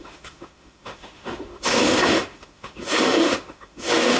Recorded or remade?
remade